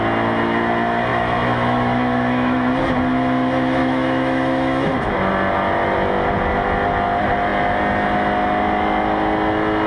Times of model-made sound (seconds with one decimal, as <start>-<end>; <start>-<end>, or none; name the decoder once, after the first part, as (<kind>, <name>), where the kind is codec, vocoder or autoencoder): 1.1-2.8 (autoencoder, DAC-VAE); 3.8-5.3